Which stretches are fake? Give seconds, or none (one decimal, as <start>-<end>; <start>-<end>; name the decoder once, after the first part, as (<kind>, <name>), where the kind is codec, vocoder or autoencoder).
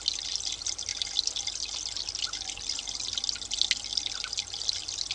none